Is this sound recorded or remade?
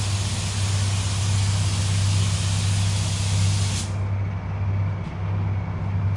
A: recorded